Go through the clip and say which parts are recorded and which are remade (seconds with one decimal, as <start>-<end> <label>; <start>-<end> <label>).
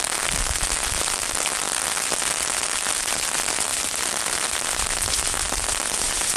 0.0-6.4 recorded